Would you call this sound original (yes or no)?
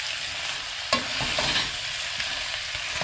yes